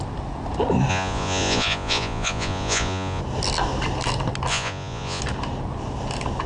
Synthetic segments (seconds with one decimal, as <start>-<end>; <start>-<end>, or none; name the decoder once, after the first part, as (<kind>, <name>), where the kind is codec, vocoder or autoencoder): 0.9-3.2 (vocoder, Vocos); 4.5-5.2